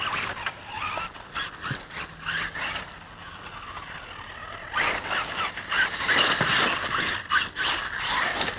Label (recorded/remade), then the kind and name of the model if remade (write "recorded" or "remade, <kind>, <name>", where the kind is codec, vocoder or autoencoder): recorded